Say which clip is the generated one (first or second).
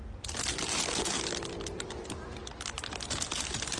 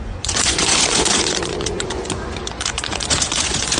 second